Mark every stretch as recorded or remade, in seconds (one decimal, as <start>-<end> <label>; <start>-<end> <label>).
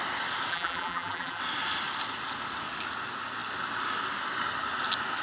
0.0-0.5 recorded; 0.5-1.4 remade; 1.4-5.2 recorded